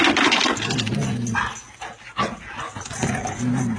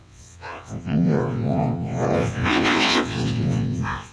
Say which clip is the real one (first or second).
first